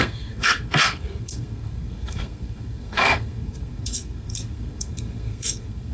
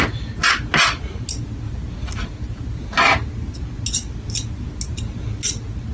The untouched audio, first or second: second